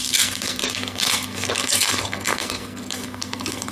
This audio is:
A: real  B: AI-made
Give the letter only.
B